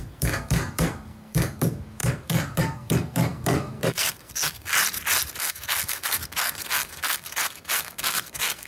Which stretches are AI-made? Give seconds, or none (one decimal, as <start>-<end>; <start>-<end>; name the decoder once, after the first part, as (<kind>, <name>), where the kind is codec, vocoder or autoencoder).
0.0-4.7 (codec, SNAC); 5.4-8.7